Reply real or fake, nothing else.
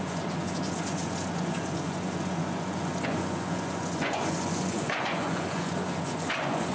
fake